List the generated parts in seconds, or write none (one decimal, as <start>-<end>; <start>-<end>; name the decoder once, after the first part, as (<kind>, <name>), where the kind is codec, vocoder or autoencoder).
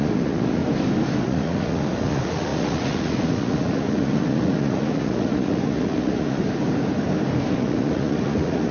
0.0-0.6 (vocoder, Vocos); 1.2-6.4; 7.5-8.7